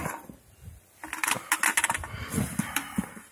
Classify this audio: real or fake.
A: real